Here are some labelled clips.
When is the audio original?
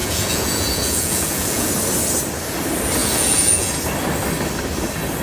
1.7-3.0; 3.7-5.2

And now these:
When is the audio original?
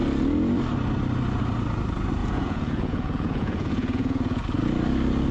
0.0-2.2; 4.4-5.3